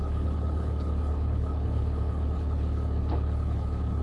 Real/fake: fake